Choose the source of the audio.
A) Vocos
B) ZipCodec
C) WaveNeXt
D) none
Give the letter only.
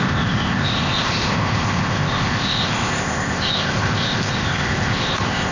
B